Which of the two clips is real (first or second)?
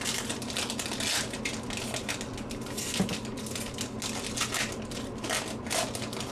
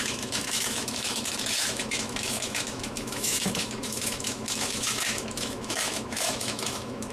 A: first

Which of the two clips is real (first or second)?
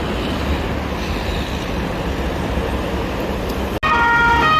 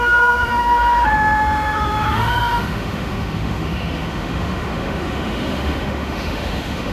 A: first